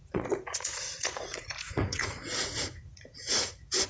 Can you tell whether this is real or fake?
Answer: fake